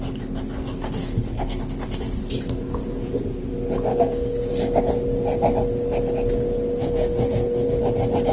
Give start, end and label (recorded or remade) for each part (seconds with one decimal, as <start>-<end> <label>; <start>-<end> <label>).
0.0-0.6 recorded; 0.6-1.6 remade; 1.6-3.9 recorded; 3.9-4.5 remade; 4.5-6.8 recorded; 6.8-7.8 remade; 7.8-8.3 recorded